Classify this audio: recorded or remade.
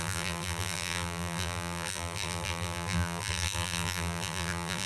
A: remade